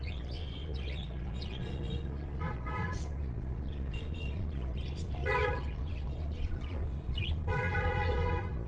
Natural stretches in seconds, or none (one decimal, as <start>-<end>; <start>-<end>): none